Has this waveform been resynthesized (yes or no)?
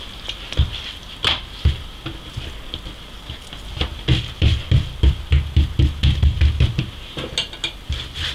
no